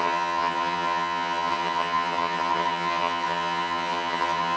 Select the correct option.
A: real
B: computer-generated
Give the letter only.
B